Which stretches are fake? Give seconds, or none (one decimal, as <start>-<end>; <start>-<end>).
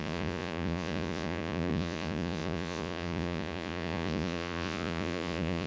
0.0-5.7